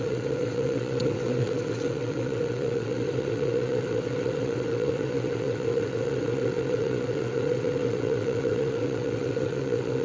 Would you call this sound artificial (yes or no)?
yes